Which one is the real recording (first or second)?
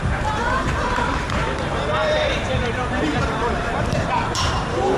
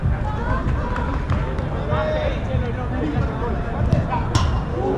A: second